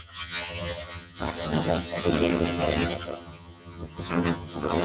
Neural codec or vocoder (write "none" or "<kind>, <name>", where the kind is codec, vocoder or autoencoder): vocoder, HiFi-GAN